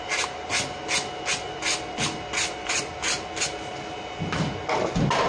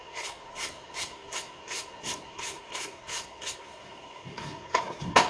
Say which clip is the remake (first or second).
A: second